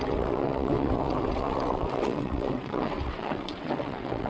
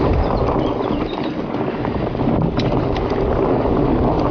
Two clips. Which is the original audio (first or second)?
second